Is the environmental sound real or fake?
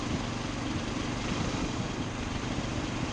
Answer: real